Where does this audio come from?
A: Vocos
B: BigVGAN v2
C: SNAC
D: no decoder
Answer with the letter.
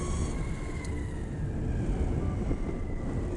D